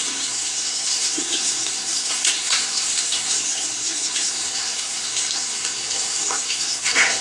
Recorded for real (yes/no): no